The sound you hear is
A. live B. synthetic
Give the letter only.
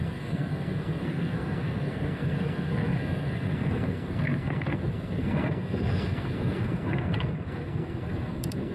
B